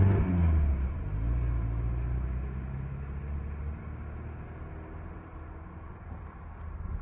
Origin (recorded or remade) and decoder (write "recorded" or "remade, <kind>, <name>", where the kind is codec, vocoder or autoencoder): recorded